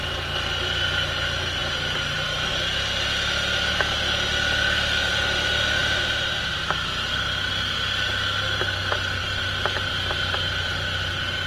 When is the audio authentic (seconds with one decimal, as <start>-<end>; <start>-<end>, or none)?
0.0-1.6; 2.5-5.8; 7.5-9.2; 11.1-11.5